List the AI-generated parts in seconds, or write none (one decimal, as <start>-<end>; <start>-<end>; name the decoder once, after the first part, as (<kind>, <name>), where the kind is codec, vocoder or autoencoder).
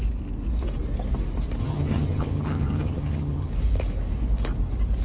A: 1.6-3.5 (vocoder, HiFi-GAN)